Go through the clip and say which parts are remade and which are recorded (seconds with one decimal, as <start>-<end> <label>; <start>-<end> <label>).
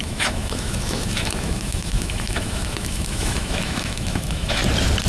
0.0-4.6 remade; 4.6-5.1 recorded